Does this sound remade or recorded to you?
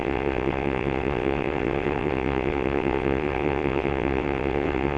remade